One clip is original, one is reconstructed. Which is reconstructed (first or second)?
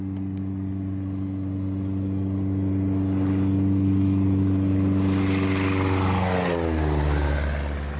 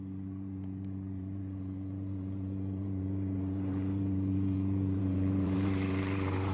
second